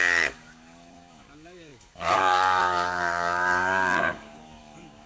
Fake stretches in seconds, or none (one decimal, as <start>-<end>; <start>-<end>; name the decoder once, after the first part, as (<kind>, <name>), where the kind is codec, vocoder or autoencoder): 0.0-5.1 (codec, DAC)